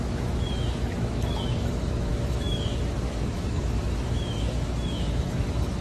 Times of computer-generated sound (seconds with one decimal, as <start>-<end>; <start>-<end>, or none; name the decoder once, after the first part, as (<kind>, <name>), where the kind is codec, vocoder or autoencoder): 0.0-5.8 (autoencoder, DAC-VAE)